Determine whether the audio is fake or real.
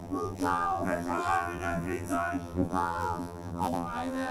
fake